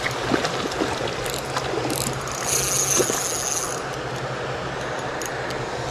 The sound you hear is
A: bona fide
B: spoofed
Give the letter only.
A